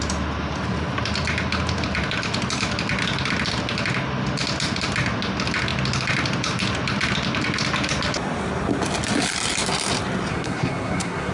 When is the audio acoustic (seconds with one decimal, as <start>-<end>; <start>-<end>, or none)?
0.0-10.3